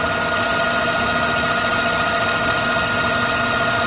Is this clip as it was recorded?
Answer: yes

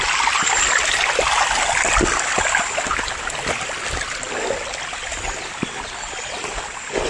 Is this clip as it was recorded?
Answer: yes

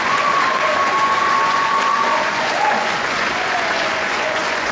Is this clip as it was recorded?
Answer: no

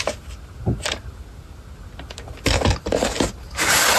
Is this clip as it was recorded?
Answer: yes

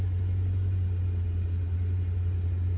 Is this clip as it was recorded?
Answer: yes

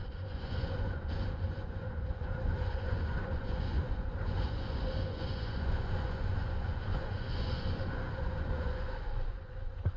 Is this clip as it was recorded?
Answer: no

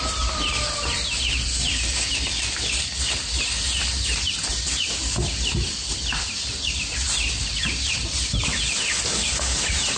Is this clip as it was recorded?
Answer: yes